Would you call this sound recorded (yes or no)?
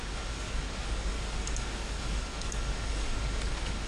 no